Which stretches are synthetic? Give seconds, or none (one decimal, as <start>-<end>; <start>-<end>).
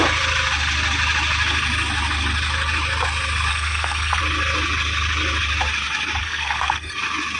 3.5-4.2; 6.2-6.9